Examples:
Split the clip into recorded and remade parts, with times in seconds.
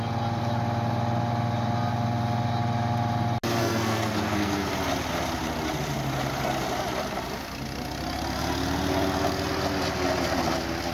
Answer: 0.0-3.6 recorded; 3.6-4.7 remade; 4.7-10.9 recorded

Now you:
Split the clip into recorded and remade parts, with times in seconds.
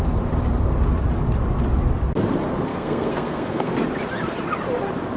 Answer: 0.0-2.7 recorded; 2.7-3.7 remade; 3.7-5.2 recorded